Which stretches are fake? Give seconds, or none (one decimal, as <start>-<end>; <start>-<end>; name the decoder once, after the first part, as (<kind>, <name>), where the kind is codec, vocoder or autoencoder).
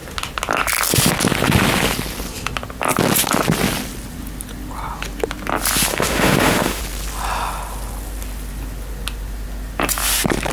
5.9-6.8 (autoencoder, DAC-VAE)